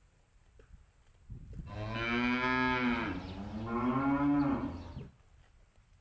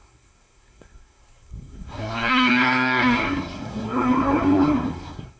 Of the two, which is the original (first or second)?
first